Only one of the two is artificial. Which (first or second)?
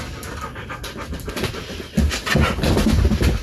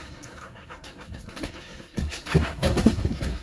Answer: second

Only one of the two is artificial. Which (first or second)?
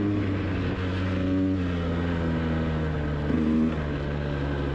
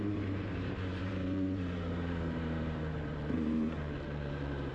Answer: second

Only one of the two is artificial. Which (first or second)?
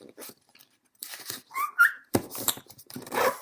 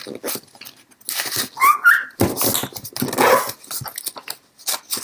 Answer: first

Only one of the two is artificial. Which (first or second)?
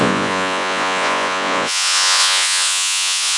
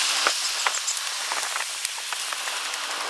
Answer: first